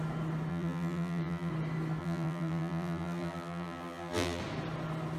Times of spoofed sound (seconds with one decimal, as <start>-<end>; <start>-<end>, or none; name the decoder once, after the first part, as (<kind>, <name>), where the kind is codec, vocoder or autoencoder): 0.5-1.5 (vocoder, BigVGAN v2); 2.0-4.4